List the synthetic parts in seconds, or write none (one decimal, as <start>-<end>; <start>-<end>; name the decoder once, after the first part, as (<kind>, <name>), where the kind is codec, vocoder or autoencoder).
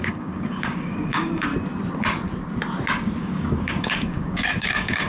0.0-1.5 (codec, DAC); 3.2-5.1